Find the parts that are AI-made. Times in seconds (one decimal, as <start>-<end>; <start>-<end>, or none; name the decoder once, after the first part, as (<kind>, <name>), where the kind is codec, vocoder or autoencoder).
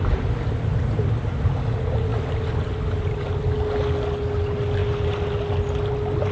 none